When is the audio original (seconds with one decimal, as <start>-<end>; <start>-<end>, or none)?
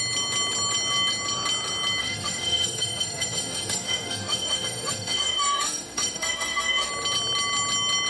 0.0-2.0; 6.9-8.1